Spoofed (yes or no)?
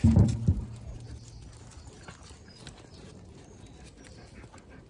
no